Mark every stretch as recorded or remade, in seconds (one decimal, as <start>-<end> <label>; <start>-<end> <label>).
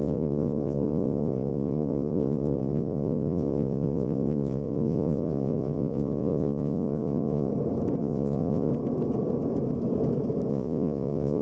0.0-7.5 remade; 7.5-8.0 recorded; 8.0-8.7 remade; 8.7-10.5 recorded; 10.5-11.4 remade